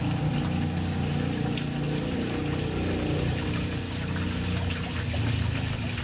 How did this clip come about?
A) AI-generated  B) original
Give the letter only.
B